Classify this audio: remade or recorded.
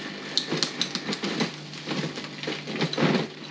recorded